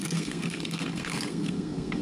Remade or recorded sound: remade